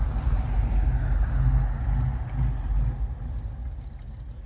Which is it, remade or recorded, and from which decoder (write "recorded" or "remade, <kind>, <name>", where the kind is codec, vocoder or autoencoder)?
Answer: recorded